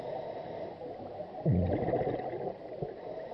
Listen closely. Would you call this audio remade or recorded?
recorded